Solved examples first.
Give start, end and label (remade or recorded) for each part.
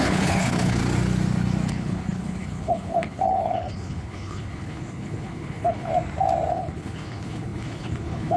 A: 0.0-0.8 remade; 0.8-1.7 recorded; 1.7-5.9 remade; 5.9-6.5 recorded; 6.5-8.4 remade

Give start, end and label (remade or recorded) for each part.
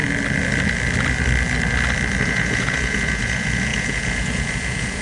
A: 0.0-2.2 recorded; 2.2-5.0 remade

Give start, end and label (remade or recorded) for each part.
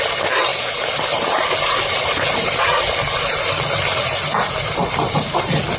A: 0.0-5.8 recorded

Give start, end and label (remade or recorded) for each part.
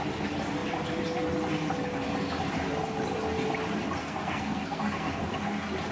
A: 0.0-4.0 recorded; 4.0-5.3 remade; 5.3-5.9 recorded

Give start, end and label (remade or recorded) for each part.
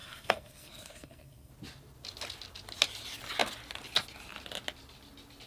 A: 0.0-1.5 remade; 1.5-5.5 recorded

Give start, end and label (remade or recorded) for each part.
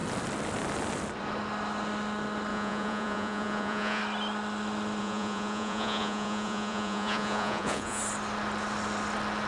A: 0.0-2.5 recorded; 2.5-4.0 remade; 4.0-5.0 recorded; 5.0-8.0 remade; 8.0-9.5 recorded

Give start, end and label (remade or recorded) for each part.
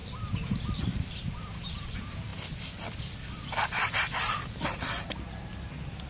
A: 0.0-0.8 recorded; 0.8-2.3 remade; 2.3-6.1 recorded